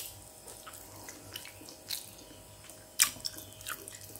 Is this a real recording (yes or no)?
yes